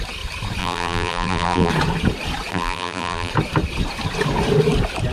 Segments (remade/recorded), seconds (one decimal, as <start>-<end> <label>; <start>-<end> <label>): 0.0-0.6 recorded; 0.6-1.7 remade; 1.7-2.5 recorded; 2.5-3.3 remade; 3.3-5.1 recorded